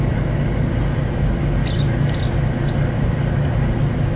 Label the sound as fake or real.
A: real